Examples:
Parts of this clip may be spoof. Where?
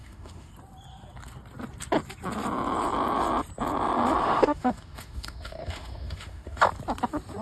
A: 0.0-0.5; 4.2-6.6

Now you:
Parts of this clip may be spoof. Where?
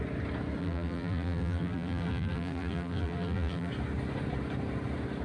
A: 0.6-3.7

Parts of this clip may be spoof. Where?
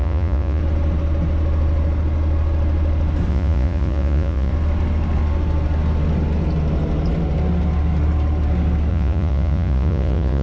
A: 0.0-0.6; 3.3-4.5; 8.9-10.4